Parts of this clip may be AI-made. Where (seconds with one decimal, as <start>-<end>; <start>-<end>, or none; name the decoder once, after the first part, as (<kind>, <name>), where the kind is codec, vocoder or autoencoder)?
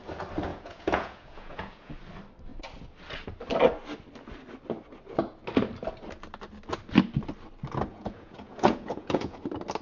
0.5-1.9 (vocoder, Vocos); 7.9-9.4